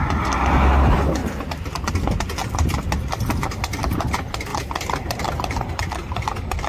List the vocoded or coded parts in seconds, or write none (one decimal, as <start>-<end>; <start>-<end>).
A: 1.2-1.9; 2.4-4.1; 4.5-5.3